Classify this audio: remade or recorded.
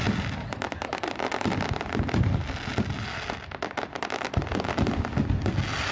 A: recorded